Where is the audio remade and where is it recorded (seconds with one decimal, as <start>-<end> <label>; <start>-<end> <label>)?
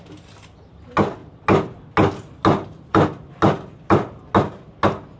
0.0-5.2 recorded